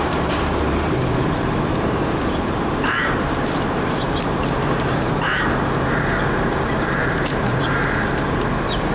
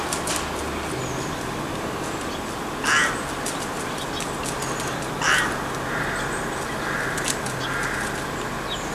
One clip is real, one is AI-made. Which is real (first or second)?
second